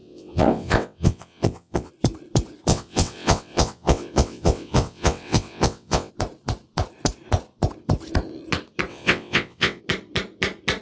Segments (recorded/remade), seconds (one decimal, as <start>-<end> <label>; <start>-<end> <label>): 0.0-1.9 remade; 1.9-2.7 recorded; 2.7-6.1 remade; 6.1-8.9 recorded; 8.9-9.8 remade; 9.8-10.8 recorded